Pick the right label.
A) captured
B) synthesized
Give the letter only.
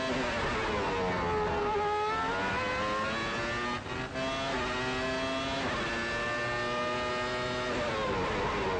A